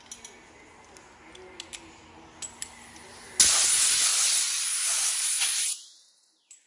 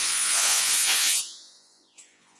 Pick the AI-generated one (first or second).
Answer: second